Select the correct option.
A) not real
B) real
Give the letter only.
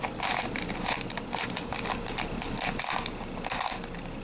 B